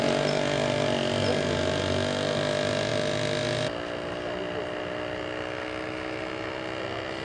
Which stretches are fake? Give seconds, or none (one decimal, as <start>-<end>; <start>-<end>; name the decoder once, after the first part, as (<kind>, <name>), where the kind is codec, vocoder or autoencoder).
none